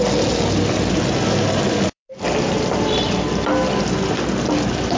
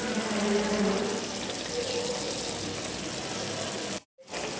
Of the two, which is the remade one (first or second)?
first